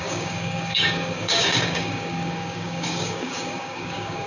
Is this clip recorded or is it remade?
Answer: remade